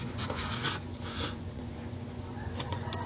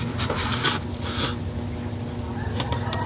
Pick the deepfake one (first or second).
first